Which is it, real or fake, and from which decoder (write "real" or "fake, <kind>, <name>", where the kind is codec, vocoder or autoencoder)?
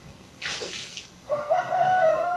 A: fake, codec, SNAC